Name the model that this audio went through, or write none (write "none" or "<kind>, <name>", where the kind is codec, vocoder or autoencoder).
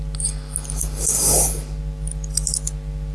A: none